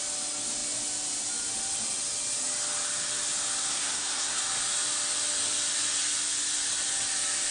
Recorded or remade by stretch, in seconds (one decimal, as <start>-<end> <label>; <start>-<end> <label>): 0.0-3.7 recorded; 3.7-4.4 remade; 4.4-7.5 recorded